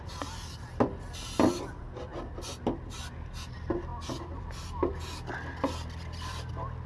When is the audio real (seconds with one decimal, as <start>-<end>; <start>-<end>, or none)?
0.0-6.9